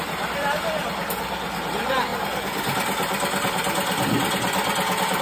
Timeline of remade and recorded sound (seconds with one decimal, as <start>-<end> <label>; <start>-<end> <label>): 0.0-5.2 recorded